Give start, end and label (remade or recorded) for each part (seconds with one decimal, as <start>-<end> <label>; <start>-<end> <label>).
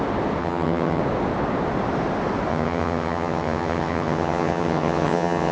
0.0-0.4 recorded; 0.4-1.0 remade; 1.0-2.5 recorded; 2.5-5.5 remade